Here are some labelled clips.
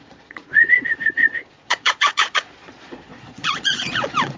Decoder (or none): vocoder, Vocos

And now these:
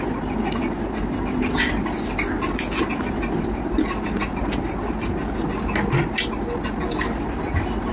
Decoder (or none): none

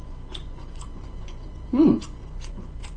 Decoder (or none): vocoder, Vocos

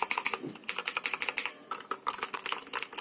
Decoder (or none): none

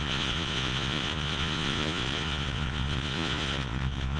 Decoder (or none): vocoder, Vocos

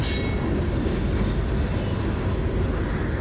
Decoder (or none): none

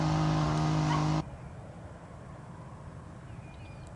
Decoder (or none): none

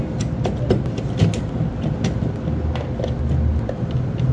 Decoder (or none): none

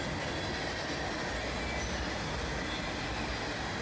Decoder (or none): none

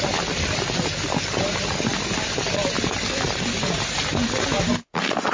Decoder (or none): none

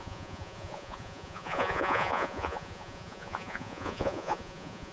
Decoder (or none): vocoder, Vocos